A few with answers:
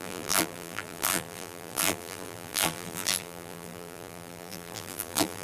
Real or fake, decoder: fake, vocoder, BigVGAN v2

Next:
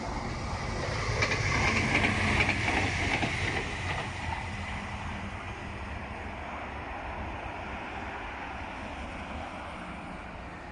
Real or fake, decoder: real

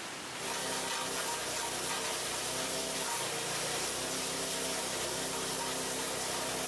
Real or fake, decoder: real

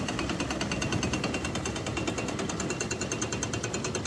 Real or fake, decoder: fake, vocoder, BigVGAN v2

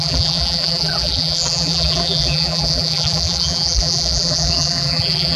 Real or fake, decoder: fake, vocoder, BigVGAN v2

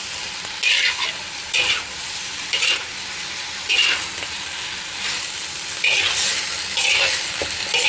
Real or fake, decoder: real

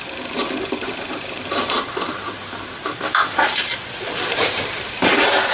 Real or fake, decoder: fake, vocoder, BigVGAN v2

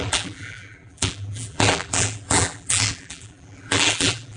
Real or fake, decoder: fake, vocoder, BigVGAN v2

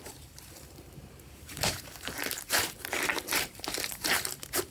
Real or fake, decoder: fake, vocoder, BigVGAN v2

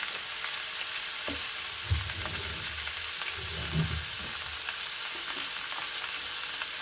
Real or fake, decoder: real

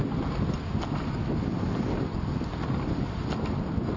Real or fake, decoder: real